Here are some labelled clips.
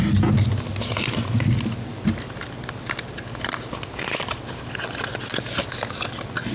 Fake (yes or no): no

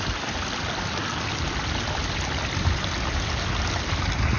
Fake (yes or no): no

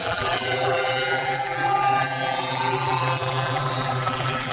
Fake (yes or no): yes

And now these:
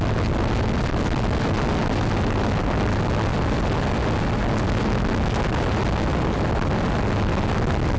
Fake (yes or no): no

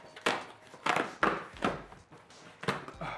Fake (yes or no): no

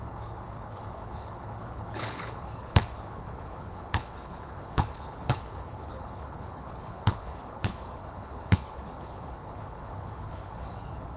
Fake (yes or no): yes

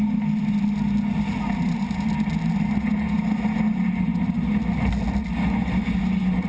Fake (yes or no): no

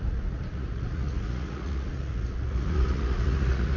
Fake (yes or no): yes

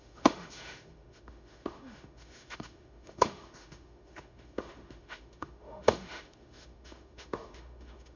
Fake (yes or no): yes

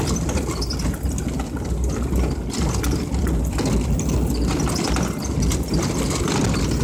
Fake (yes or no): no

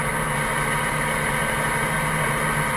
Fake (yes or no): no